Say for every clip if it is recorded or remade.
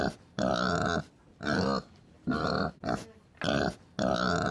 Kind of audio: remade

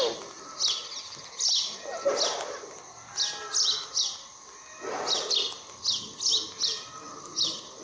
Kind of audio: recorded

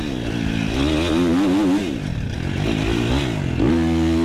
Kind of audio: recorded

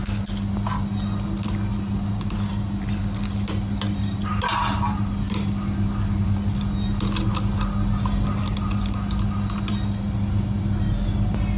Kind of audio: recorded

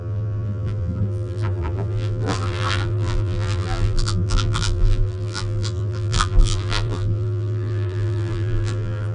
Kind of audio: remade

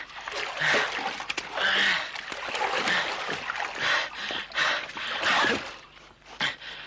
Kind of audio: recorded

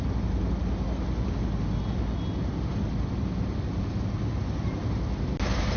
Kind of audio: recorded